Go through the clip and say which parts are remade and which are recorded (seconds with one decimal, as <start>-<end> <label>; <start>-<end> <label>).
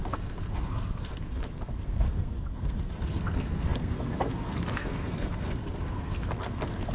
0.0-6.9 remade